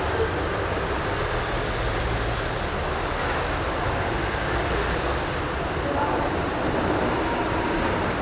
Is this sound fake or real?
real